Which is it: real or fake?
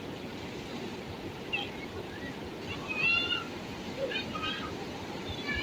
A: real